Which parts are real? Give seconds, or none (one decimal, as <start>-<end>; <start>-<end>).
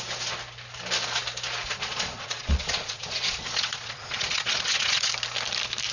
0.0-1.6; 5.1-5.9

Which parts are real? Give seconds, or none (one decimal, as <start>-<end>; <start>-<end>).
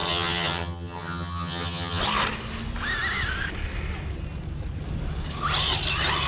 2.0-6.3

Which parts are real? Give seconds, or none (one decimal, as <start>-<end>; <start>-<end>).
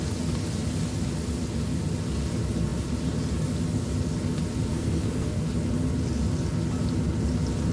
0.0-4.7; 5.5-7.7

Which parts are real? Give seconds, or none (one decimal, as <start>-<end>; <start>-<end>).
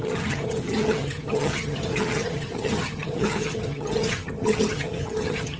none